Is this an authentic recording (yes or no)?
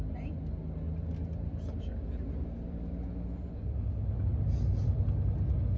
yes